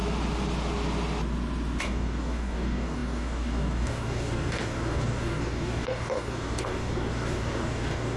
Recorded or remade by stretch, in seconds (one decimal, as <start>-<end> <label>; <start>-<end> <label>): 0.0-1.8 recorded; 1.8-8.2 remade